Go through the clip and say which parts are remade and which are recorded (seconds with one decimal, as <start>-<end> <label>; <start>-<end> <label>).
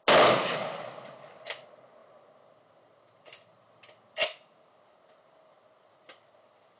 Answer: 0.0-6.8 recorded